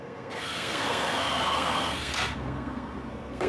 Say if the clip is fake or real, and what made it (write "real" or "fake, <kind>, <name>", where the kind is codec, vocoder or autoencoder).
fake, codec, SNAC